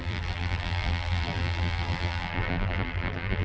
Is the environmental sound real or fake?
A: fake